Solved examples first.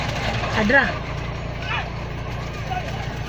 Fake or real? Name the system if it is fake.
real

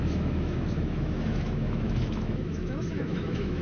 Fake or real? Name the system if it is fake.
fake, autoencoder, DAC-VAE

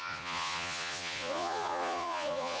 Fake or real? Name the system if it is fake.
fake, vocoder, Vocos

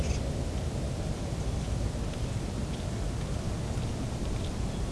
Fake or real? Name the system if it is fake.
real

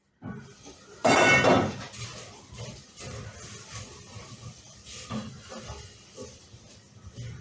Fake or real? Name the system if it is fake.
fake, vocoder, BigVGAN v2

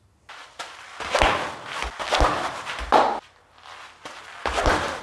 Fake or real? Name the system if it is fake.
real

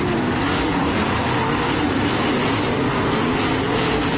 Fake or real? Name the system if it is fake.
real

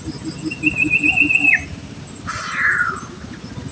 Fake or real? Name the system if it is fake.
real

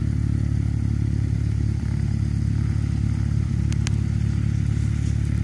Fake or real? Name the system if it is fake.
real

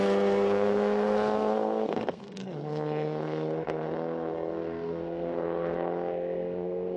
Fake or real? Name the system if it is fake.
fake, codec, SNAC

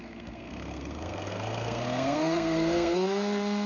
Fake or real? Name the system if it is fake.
fake, codec, SNAC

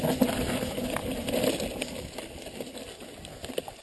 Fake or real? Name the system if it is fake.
real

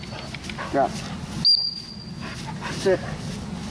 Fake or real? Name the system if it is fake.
real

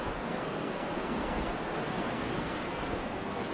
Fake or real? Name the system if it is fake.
fake, codec, SNAC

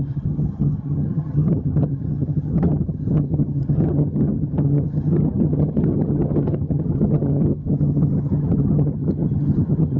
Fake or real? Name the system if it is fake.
fake, vocoder, HiFi-GAN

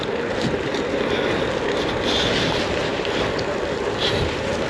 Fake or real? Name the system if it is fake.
real